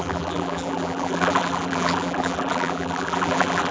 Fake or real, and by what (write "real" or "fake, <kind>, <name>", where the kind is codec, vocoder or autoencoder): fake, vocoder, BigVGAN v2